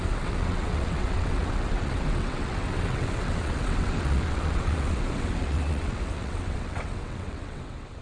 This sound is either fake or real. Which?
fake